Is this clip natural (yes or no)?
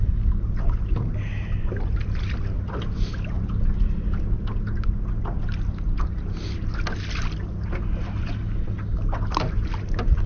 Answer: yes